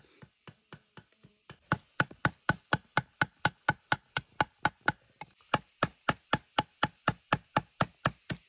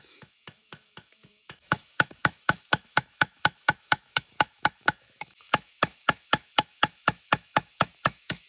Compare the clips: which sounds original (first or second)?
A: first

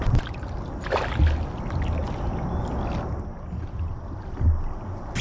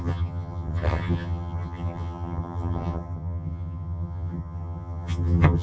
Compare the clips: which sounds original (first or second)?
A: first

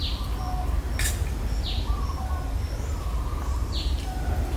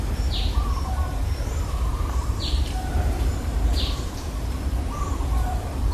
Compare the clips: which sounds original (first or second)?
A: first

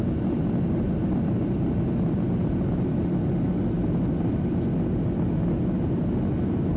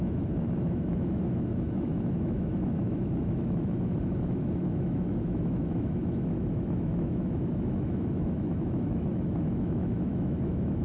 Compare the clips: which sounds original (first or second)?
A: first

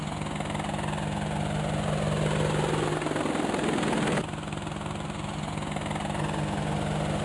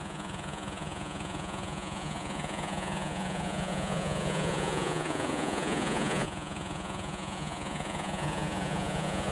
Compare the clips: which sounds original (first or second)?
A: first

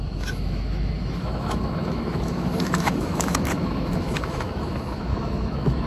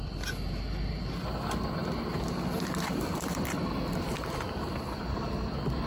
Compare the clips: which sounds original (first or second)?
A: second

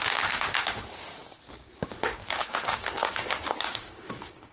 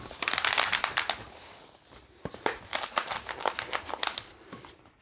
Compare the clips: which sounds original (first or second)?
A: second